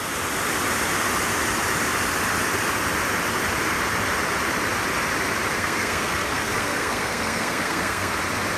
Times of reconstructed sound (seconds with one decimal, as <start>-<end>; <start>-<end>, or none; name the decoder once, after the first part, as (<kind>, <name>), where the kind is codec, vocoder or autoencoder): 5.5-8.2 (codec, SNAC)